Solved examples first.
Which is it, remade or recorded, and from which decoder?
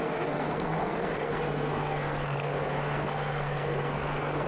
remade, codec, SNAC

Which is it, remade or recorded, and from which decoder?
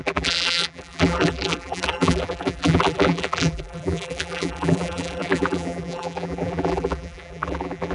remade, vocoder, BigVGAN v2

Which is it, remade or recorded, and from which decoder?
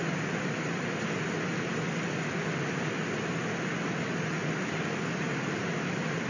recorded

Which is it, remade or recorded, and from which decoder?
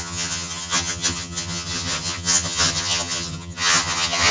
remade, vocoder, HiFi-GAN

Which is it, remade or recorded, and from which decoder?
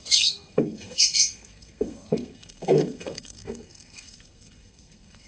remade, codec, SNAC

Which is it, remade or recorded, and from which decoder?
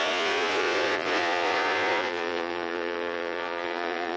remade, vocoder, Vocos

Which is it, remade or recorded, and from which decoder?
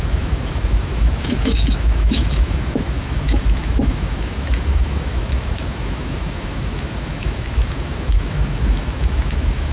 remade, autoencoder, DAC-VAE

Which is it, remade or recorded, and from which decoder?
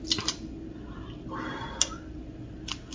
recorded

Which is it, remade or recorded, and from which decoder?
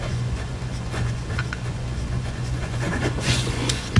remade, vocoder, Vocos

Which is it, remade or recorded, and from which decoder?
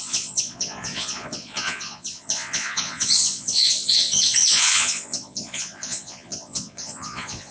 remade, vocoder, Vocos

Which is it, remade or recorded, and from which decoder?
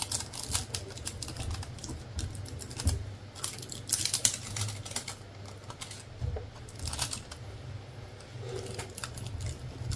recorded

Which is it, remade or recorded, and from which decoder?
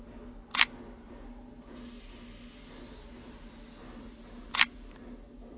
recorded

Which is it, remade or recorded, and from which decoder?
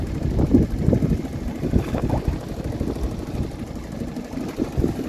recorded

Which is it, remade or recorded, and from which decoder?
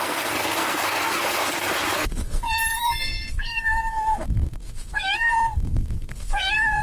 remade, codec, SNAC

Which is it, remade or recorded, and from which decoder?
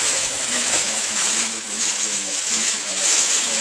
remade, autoencoder, DAC-VAE